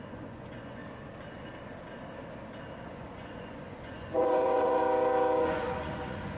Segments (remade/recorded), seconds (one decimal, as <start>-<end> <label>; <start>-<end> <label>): 0.0-0.8 remade; 0.8-2.9 recorded; 2.9-4.8 remade; 4.8-5.4 recorded; 5.4-6.4 remade